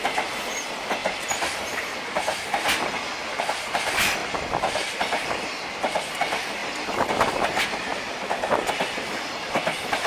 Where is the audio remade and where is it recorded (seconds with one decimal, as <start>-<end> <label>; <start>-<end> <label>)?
0.0-1.0 recorded; 1.0-3.4 remade; 3.4-4.2 recorded; 4.2-5.5 remade; 5.5-6.6 recorded; 6.6-7.3 remade; 7.3-10.1 recorded